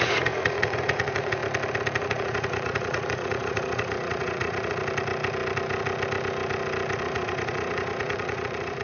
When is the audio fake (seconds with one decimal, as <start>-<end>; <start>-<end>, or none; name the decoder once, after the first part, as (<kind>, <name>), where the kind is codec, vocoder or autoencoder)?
0.0-1.4 (vocoder, Vocos); 2.0-4.8; 7.0-8.8